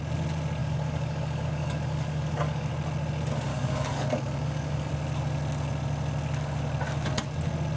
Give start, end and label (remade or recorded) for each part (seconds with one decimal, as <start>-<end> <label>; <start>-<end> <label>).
0.0-0.6 recorded; 0.6-2.7 remade; 2.7-3.5 recorded; 3.5-4.9 remade; 4.9-7.8 recorded